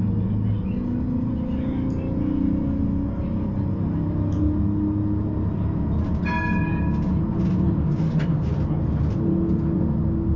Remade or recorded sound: recorded